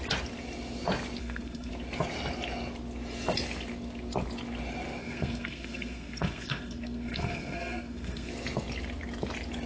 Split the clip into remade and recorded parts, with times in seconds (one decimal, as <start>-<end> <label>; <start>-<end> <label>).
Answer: 0.0-1.2 recorded; 1.2-1.7 remade; 1.7-5.0 recorded; 5.0-8.3 remade; 8.3-9.7 recorded